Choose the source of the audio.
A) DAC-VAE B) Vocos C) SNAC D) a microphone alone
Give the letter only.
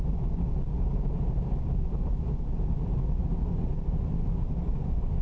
D